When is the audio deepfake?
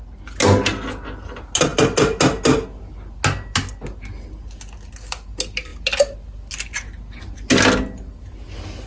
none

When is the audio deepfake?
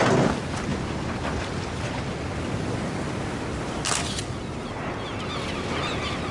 none